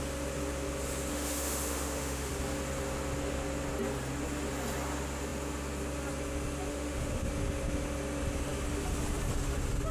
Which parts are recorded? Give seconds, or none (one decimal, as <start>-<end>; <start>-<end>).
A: 0.0-1.1; 2.3-6.7; 7.3-9.9